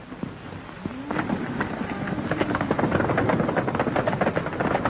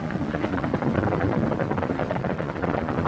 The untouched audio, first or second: first